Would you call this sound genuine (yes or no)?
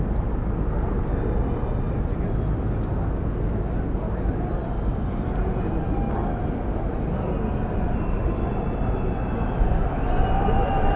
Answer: yes